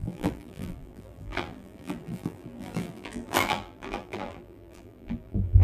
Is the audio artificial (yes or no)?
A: yes